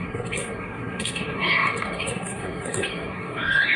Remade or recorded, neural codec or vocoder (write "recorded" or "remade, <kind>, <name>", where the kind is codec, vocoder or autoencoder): remade, codec, SNAC